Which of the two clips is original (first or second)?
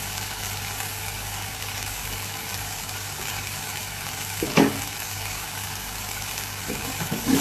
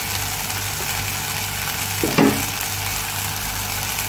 second